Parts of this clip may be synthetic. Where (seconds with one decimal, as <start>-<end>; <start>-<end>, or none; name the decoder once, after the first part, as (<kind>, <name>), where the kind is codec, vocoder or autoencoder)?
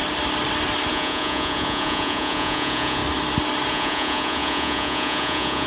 0.9-3.0 (vocoder, Vocos); 3.7-5.7